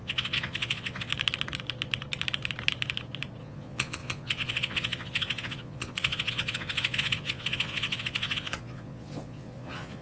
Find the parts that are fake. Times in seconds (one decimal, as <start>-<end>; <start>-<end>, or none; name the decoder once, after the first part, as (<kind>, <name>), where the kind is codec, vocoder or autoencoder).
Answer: 0.0-1.1 (vocoder, Vocos); 3.4-10.0